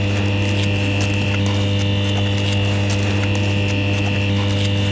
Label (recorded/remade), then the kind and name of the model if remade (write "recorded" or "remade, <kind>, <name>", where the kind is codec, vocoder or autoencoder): recorded